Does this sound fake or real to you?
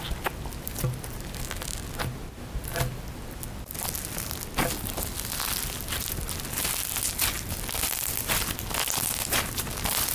real